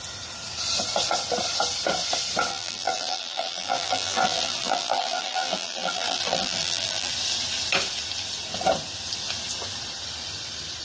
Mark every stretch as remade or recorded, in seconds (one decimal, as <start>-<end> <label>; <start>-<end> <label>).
0.0-2.5 recorded; 2.5-7.1 remade; 7.1-10.8 recorded